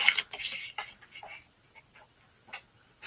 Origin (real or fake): real